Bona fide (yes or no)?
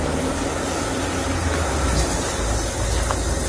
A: yes